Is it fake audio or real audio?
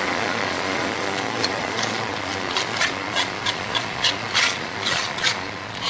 fake